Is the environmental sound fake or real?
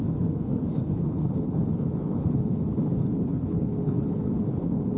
fake